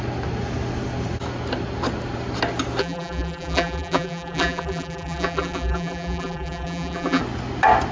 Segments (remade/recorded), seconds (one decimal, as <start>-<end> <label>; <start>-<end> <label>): 0.0-2.8 recorded; 2.8-7.2 remade; 7.2-7.9 recorded